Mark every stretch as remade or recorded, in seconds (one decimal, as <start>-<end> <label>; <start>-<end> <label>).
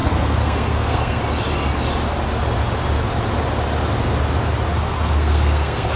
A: 0.0-1.2 remade; 1.2-4.7 recorded; 4.7-6.0 remade